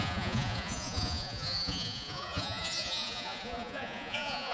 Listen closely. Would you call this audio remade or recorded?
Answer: remade